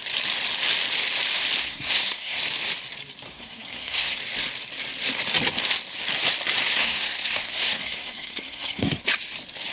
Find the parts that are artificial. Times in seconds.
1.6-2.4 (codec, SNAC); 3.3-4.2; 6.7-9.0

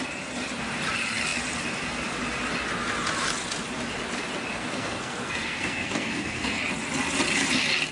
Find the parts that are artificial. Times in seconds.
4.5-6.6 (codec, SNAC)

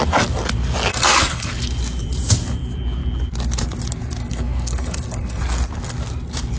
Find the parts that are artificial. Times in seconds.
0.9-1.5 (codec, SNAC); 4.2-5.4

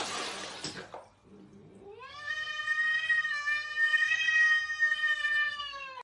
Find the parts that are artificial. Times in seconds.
2.1-6.0 (codec, SNAC)

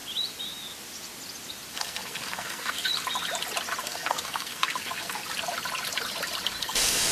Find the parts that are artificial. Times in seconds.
1.7-2.9 (codec, SNAC); 3.8-5.2; 6.6-7.1

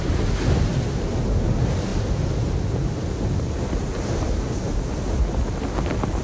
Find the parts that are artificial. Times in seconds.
none